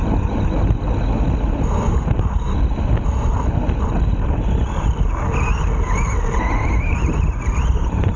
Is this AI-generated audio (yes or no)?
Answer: no